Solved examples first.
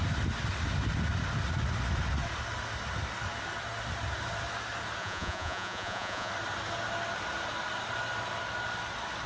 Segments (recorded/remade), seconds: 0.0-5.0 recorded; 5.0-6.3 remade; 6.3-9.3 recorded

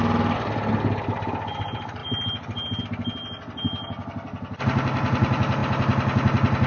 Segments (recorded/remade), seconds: 0.0-6.7 recorded

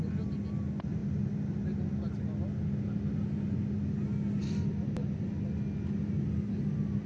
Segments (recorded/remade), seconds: 0.0-7.1 recorded

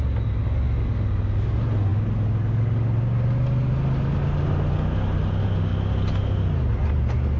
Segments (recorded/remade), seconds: 0.0-7.4 recorded